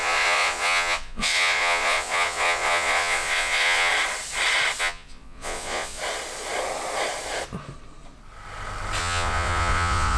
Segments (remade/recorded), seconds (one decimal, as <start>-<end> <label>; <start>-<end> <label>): 0.0-3.9 remade; 3.9-4.8 recorded; 4.8-6.0 remade; 6.0-9.0 recorded; 9.0-10.2 remade